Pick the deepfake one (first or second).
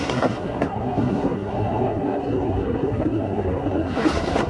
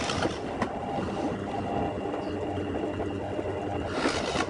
first